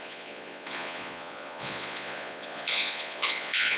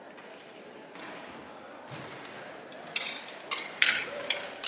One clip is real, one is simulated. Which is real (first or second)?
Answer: second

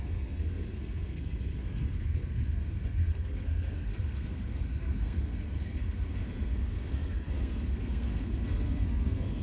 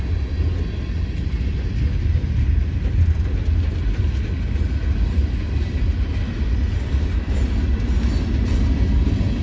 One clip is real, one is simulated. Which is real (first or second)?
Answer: second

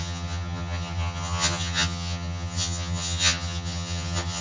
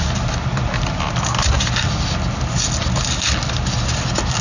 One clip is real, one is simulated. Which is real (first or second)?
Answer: second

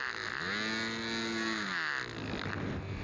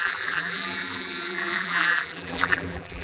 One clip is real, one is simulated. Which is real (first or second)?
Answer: first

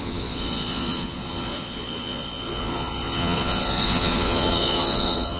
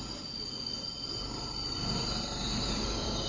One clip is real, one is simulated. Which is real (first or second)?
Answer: second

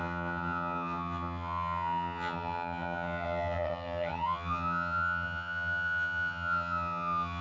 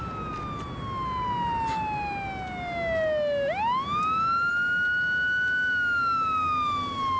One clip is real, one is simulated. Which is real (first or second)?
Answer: second